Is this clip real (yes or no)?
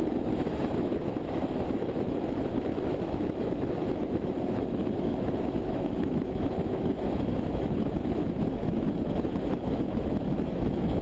no